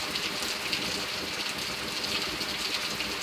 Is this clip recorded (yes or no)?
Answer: yes